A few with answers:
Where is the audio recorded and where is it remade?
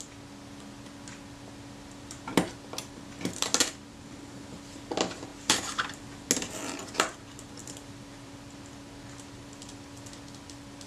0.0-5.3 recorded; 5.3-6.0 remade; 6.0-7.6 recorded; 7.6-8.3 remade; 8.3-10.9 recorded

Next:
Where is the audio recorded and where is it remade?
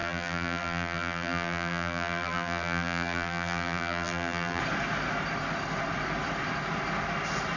0.0-4.6 remade; 4.6-7.6 recorded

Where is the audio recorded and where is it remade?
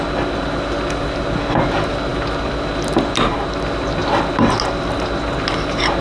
0.0-6.0 recorded